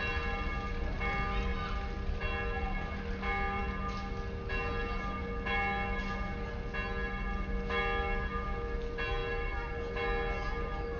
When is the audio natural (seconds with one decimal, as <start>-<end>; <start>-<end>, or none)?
0.0-11.0